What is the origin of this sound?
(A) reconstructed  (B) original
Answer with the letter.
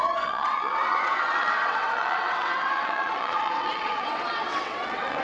A